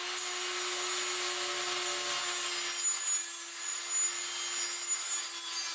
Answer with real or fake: real